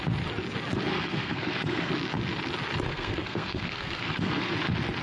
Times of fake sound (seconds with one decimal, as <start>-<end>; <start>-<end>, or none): 0.9-1.9; 2.9-4.5